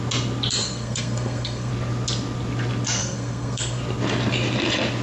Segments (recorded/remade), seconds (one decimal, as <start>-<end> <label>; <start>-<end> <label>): 0.0-0.6 recorded; 0.6-1.7 remade; 1.7-3.0 recorded; 3.0-3.8 remade; 3.8-5.0 recorded

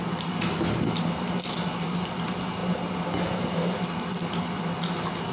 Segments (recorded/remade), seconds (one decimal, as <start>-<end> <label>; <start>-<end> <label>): 0.0-5.3 recorded

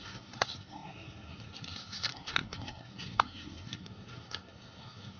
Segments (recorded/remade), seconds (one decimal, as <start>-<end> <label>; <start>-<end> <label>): 0.0-5.2 remade

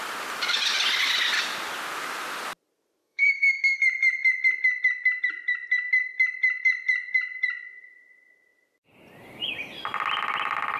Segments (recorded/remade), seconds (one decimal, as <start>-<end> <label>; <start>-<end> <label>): 0.0-3.0 recorded; 3.0-3.8 remade; 3.8-10.8 recorded

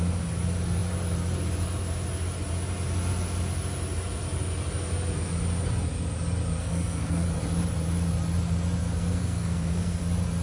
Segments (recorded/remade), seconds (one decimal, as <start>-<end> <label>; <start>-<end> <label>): 0.0-6.6 recorded; 6.6-7.3 remade; 7.3-8.8 recorded; 8.8-10.0 remade; 10.0-10.4 recorded

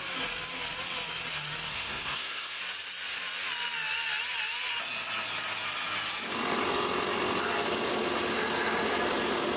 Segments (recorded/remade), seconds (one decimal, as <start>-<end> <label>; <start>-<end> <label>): 0.0-1.7 recorded; 1.7-2.6 remade; 2.6-9.6 recorded

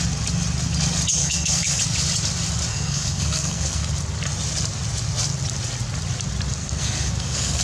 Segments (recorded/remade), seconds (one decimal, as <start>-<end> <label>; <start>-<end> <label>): 0.0-1.2 recorded; 1.2-1.8 remade; 1.8-2.7 recorded; 2.7-3.9 remade; 3.9-6.6 recorded; 6.6-7.6 remade

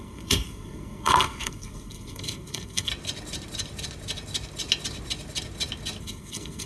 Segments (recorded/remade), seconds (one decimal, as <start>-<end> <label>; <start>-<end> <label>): 0.0-2.9 remade; 2.9-6.0 recorded; 6.0-6.7 remade